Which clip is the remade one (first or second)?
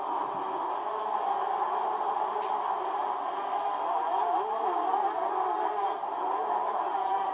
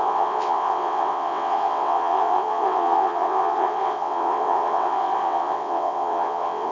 second